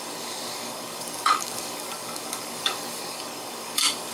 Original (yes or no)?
no